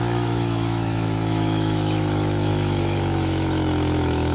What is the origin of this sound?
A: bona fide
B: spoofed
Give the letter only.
B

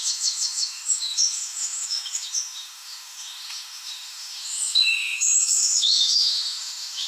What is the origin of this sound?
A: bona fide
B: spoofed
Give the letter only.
B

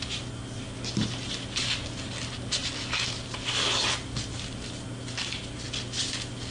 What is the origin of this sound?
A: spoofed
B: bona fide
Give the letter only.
B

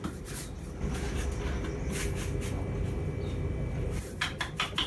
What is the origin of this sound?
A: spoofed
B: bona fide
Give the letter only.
B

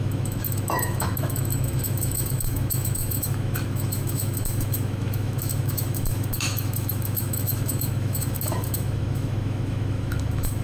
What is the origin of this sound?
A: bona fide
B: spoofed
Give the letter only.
B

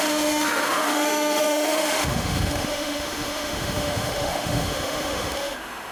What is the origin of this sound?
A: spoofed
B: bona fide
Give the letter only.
A